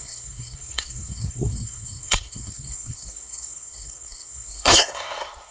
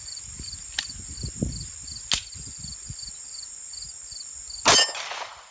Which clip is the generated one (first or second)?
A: first